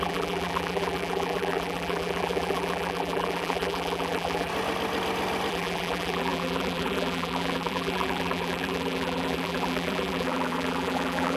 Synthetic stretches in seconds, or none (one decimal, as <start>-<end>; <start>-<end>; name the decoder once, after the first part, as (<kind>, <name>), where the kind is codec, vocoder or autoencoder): 0.0-4.5 (vocoder, BigVGAN v2); 5.5-11.4